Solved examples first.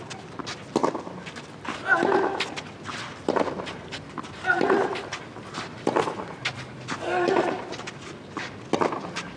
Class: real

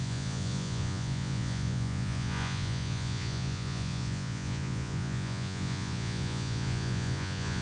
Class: fake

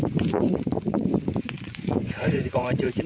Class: fake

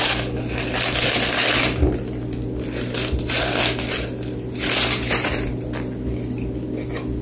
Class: real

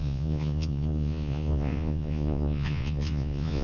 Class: fake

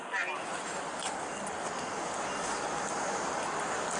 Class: real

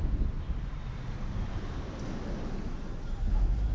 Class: real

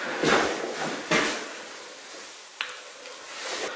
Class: real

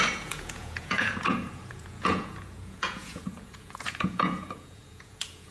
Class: fake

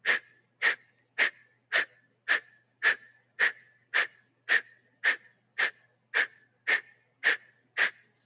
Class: real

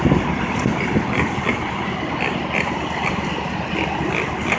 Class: real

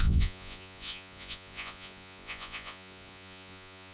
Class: fake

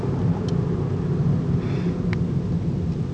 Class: real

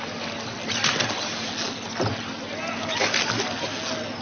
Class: real